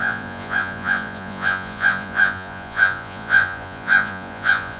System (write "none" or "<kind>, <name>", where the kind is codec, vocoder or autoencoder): vocoder, Vocos